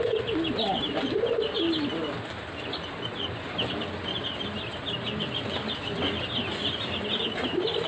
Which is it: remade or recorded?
recorded